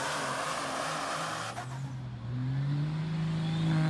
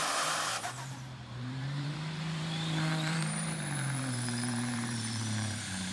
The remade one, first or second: second